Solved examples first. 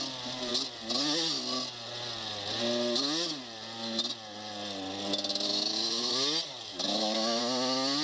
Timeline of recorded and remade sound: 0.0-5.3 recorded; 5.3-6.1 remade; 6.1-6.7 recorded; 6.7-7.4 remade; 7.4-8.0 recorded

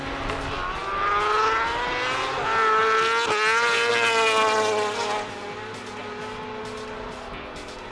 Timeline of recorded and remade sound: 0.0-7.9 recorded

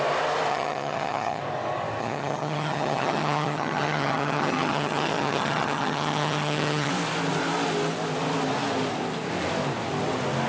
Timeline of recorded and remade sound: 0.0-0.5 recorded; 0.5-1.4 remade; 1.4-2.0 recorded; 2.0-6.9 remade; 6.9-10.5 recorded

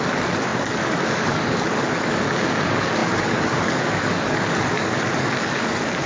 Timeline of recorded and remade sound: 0.0-6.1 remade